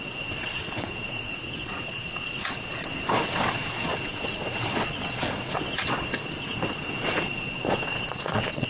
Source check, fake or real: fake